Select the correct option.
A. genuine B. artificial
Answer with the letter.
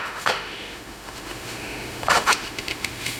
B